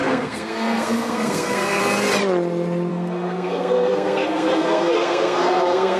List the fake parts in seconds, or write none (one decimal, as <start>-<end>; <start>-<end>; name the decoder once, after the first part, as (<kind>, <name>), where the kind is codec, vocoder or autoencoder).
0.0-1.8 (codec, SNAC); 2.9-6.0